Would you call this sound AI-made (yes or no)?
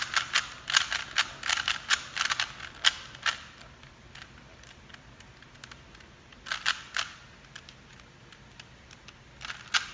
no